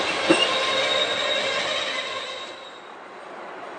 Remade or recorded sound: recorded